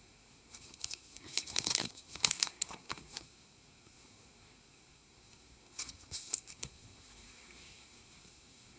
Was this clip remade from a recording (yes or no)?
yes